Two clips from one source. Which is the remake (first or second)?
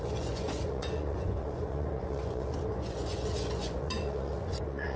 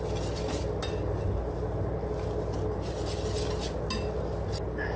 first